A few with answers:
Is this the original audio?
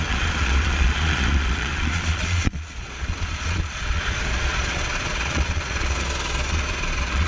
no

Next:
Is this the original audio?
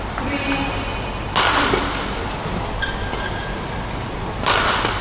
yes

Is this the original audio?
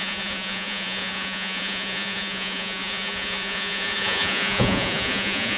no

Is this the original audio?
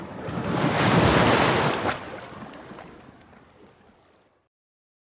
yes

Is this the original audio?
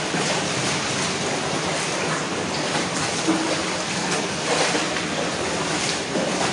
yes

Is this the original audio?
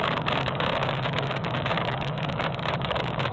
no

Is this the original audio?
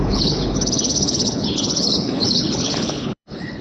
no